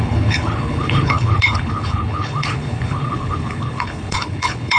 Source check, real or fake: fake